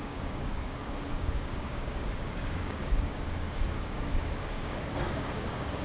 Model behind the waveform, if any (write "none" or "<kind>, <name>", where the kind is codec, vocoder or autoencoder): codec, DAC